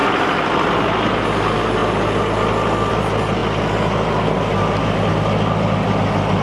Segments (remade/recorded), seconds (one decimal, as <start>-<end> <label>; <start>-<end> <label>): 0.0-6.4 recorded